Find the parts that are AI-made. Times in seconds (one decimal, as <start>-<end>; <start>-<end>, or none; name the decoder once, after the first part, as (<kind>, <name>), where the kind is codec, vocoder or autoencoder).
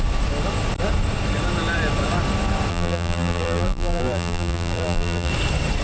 2.7-5.3 (vocoder, BigVGAN v2)